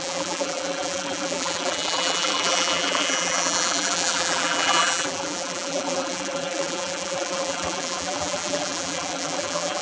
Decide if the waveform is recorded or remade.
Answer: remade